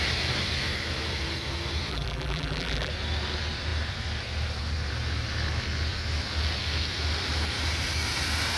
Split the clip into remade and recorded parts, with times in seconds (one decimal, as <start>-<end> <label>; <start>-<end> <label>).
0.0-1.9 recorded; 1.9-2.9 remade; 2.9-8.6 recorded